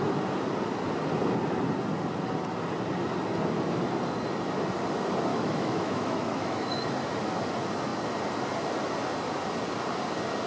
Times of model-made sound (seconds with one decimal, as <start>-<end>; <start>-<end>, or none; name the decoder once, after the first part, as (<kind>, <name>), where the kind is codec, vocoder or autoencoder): 5.3-6.9 (autoencoder, DAC-VAE)